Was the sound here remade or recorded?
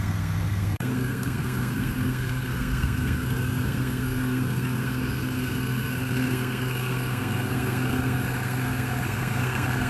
remade